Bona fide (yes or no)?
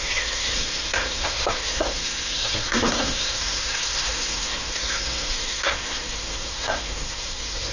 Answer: no